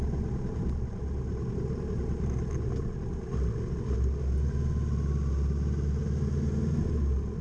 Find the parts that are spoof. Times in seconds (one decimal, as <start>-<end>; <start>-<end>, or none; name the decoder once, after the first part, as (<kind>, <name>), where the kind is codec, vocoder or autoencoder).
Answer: none